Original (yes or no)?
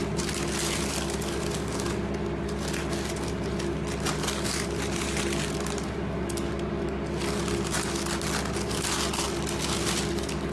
yes